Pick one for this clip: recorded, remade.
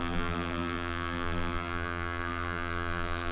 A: remade